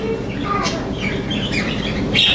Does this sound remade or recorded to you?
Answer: recorded